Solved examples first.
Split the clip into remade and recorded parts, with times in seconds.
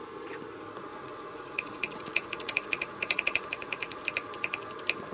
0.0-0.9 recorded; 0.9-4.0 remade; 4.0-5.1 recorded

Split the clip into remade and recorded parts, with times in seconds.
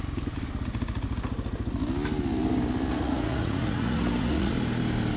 0.0-2.9 recorded; 2.9-4.5 remade; 4.5-5.2 recorded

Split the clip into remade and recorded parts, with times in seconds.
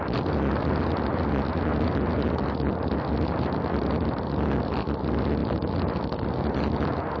0.0-7.2 recorded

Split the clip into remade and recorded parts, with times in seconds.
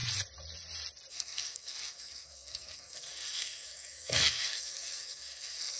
0.0-1.1 recorded; 1.1-5.8 remade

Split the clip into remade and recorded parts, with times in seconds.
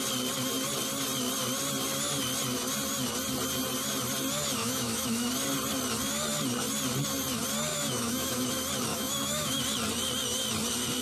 0.0-4.6 recorded; 4.6-5.3 remade; 5.3-7.7 recorded; 7.7-8.5 remade; 8.5-8.9 recorded; 8.9-9.6 remade; 9.6-11.0 recorded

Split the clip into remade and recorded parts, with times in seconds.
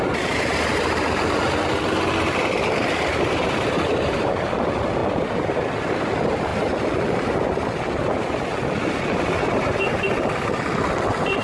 0.0-11.4 recorded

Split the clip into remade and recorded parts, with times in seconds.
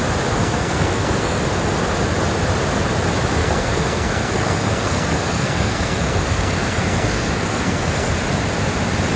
0.0-0.4 recorded; 0.4-1.4 remade; 1.4-3.4 recorded; 3.4-8.1 remade; 8.1-9.2 recorded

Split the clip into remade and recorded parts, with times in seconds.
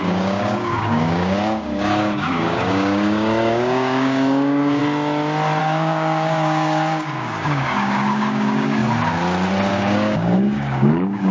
0.0-4.8 remade; 4.8-5.6 recorded; 5.6-8.8 remade; 8.8-9.7 recorded; 9.7-11.3 remade